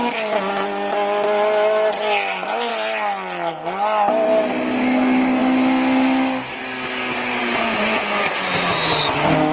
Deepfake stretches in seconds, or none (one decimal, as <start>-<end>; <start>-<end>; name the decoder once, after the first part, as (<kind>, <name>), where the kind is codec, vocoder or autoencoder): none